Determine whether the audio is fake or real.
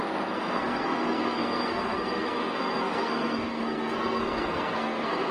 fake